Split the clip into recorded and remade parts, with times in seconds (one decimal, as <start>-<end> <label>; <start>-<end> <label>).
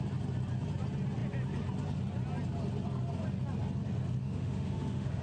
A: 0.0-4.2 recorded; 4.2-5.2 remade